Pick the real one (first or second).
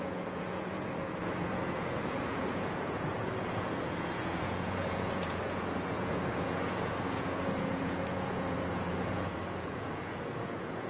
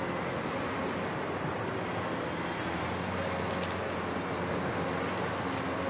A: second